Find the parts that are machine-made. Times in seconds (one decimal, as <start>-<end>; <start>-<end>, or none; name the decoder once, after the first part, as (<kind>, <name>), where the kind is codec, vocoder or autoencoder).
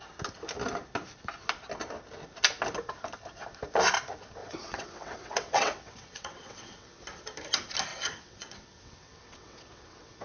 4.4-6.9 (vocoder, WaveNeXt); 7.9-10.2